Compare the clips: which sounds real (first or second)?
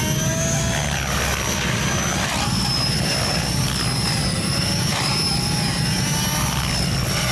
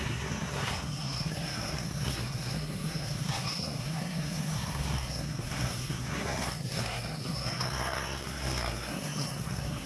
first